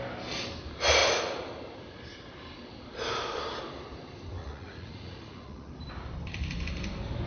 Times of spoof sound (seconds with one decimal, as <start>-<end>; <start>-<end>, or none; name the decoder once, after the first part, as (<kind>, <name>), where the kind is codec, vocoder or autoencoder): 4.4-5.7 (vocoder, Vocos)